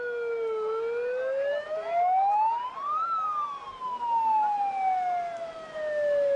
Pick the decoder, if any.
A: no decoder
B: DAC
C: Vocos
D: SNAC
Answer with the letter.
A